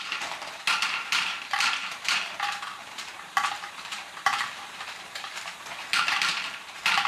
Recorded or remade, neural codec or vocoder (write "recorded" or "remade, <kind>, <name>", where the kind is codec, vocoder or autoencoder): remade, vocoder, BigVGAN v2